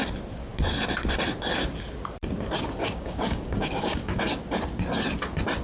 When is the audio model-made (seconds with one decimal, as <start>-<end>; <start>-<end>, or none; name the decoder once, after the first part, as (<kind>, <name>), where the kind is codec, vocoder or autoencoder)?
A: 2.8-4.2 (codec, DAC)